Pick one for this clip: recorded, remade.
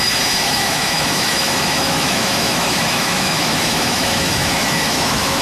remade